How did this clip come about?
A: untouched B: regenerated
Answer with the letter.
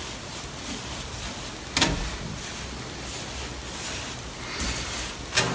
A